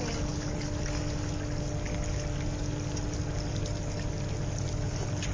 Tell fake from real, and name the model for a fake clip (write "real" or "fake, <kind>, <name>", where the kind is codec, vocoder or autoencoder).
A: real